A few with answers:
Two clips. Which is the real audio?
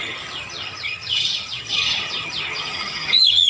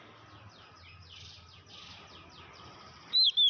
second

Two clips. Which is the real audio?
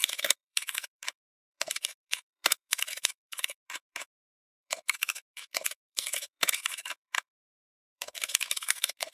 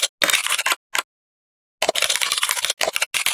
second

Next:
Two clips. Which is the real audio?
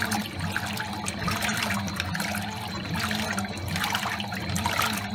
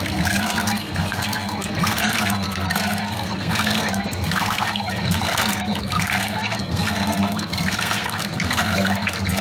first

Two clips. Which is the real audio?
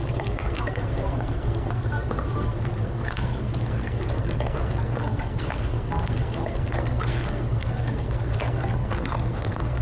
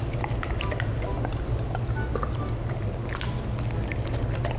second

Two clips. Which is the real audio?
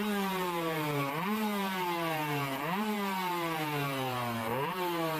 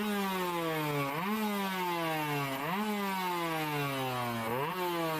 second